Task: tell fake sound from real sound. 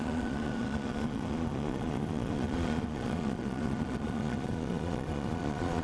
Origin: fake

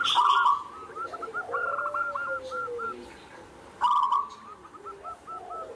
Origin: real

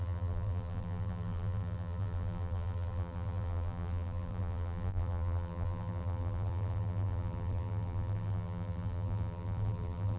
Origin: fake